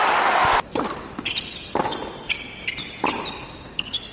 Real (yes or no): yes